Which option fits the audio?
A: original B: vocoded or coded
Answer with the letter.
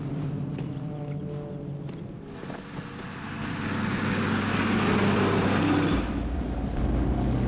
A